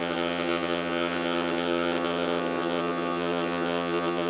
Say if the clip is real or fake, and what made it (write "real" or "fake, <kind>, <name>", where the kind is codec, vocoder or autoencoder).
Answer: fake, vocoder, HiFi-GAN